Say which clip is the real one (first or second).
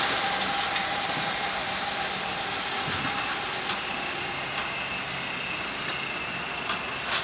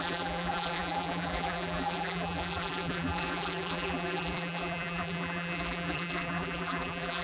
first